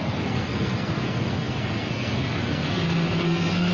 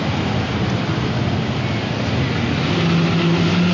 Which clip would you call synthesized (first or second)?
first